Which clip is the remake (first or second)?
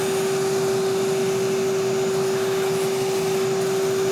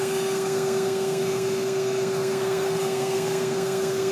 second